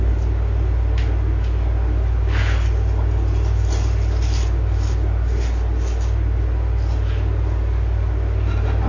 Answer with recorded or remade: recorded